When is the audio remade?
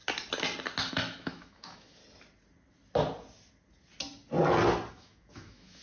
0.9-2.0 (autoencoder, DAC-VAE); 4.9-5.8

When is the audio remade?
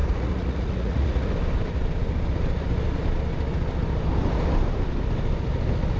0.0-1.3 (vocoder, Vocos)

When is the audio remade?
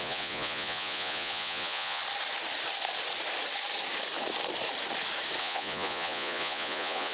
0.0-2.0 (vocoder, Vocos); 5.4-7.1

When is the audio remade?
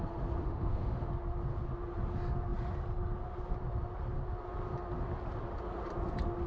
0.4-1.1 (autoencoder, DAC-VAE)